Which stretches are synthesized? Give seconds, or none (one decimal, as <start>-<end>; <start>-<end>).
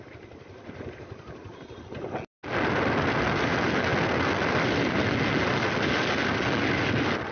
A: none